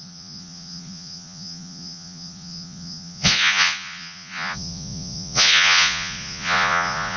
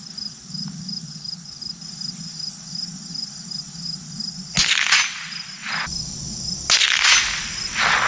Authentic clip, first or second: second